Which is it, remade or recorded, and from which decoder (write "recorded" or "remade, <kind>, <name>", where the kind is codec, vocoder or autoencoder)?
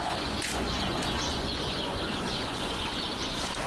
remade, vocoder, Vocos